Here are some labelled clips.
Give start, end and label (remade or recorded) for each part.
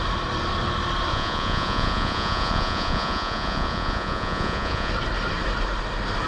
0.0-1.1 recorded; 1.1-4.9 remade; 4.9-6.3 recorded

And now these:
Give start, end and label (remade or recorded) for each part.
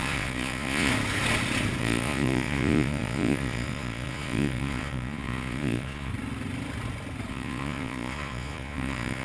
0.0-0.9 remade; 0.9-1.8 recorded; 1.8-6.1 remade; 6.1-7.3 recorded; 7.3-9.2 remade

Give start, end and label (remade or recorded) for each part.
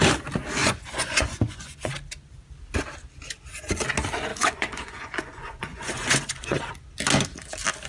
0.0-0.6 recorded; 0.6-1.9 remade; 1.9-4.3 recorded; 4.3-6.6 remade; 6.6-7.9 recorded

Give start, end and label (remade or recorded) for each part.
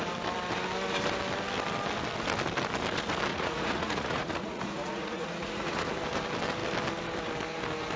0.0-3.3 recorded; 3.3-5.9 remade; 5.9-8.0 recorded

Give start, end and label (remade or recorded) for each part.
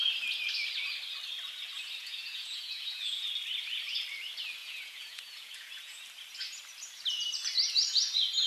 0.0-2.0 recorded; 2.0-3.3 remade; 3.3-4.6 recorded; 4.6-6.0 remade; 6.0-8.5 recorded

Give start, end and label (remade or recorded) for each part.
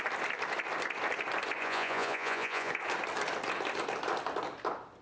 0.0-1.6 recorded; 1.6-2.7 remade; 2.7-5.0 recorded